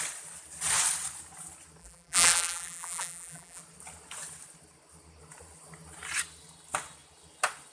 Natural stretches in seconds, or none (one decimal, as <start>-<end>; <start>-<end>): 0.0-1.8; 3.6-7.7